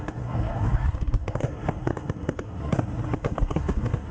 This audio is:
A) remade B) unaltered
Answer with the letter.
A